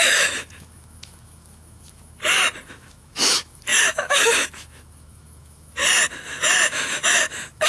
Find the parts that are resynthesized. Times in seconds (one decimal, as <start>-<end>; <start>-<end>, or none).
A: 0.0-2.2; 2.7-5.8; 6.4-7.7